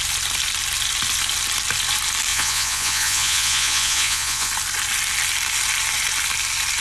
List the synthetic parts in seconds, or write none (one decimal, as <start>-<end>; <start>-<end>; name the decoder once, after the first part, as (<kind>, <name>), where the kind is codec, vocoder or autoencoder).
2.3-4.5 (vocoder, Vocos)